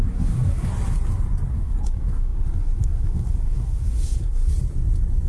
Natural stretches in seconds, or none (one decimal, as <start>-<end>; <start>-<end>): 0.7-1.5; 4.5-5.3